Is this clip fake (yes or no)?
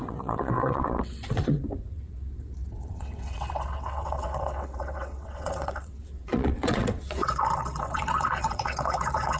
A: yes